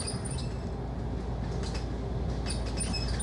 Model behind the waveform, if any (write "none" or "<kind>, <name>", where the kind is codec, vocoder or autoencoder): none